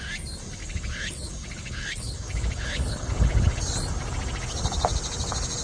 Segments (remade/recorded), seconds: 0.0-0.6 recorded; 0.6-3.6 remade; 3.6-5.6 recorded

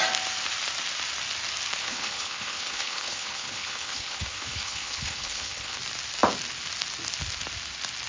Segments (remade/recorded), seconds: 0.0-1.8 recorded; 1.8-5.8 remade; 5.8-8.1 recorded

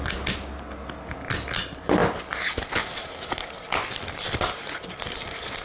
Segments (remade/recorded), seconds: 0.0-5.6 recorded

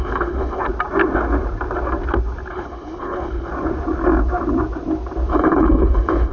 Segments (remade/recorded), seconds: 0.0-0.6 remade; 0.6-2.5 recorded; 2.5-3.5 remade; 3.5-5.3 recorded; 5.3-6.3 remade

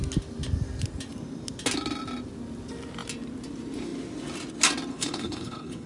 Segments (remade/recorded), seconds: 0.0-4.9 recorded; 4.9-5.9 remade

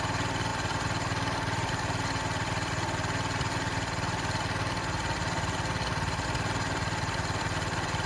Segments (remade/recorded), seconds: 0.0-8.1 recorded